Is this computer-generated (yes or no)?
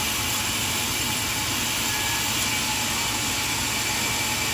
no